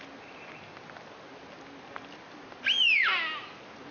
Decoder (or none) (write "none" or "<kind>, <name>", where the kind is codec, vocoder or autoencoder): none